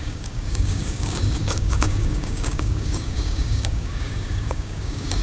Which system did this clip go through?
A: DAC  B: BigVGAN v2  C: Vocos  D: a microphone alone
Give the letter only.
A